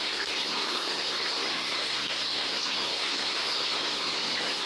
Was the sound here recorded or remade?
remade